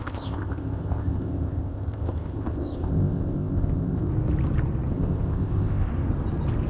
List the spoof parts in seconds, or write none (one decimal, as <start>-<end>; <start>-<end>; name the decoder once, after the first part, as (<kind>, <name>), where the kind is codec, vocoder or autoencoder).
0.0-4.1 (codec, ZipCodec); 4.9-5.9